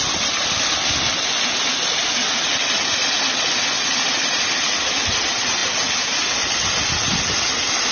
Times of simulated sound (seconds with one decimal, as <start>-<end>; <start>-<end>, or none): none